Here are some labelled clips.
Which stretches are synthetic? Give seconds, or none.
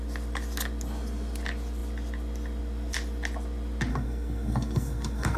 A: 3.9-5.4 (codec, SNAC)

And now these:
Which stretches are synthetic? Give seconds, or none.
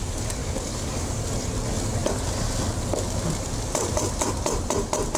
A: 0.4-1.2 (codec, DAC)